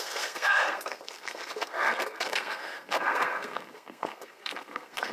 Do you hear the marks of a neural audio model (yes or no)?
yes